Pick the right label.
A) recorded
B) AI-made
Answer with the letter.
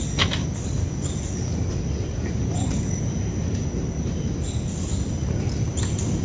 A